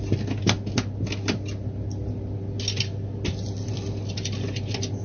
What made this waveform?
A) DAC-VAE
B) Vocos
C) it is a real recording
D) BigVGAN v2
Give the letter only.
C